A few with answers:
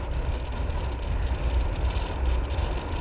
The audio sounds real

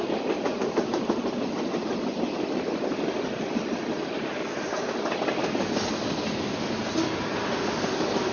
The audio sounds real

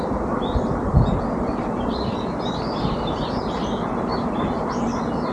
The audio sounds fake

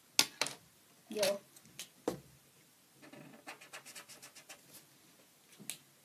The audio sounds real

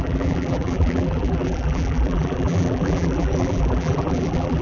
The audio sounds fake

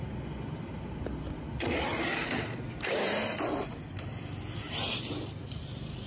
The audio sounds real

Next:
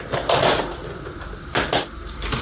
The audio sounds fake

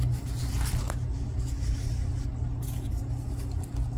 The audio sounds real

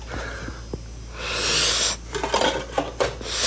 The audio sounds real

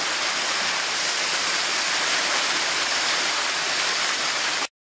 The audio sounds real